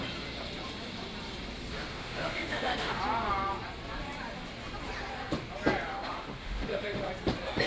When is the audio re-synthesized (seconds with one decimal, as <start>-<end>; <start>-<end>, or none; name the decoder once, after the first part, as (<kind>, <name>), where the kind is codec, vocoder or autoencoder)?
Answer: 1.9-3.0 (autoencoder, DAC-VAE); 5.9-7.1